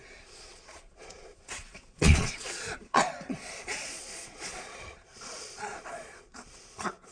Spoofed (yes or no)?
yes